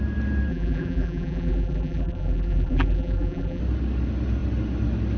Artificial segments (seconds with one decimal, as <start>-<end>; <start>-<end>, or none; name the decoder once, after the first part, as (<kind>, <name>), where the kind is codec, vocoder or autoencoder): 0.5-3.6 (vocoder, BigVGAN v2)